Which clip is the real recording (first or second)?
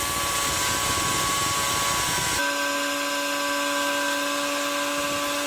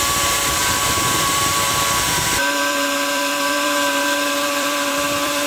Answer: first